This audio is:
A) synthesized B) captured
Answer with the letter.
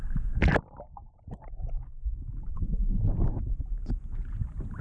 B